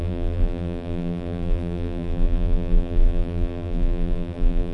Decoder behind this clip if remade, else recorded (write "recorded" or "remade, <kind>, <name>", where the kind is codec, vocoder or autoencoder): remade, vocoder, BigVGAN v2